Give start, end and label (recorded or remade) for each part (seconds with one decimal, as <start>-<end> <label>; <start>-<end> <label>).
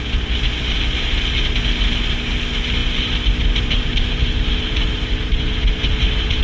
0.0-6.4 recorded